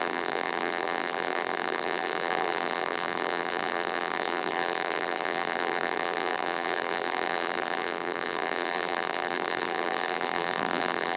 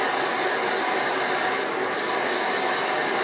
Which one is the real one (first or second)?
second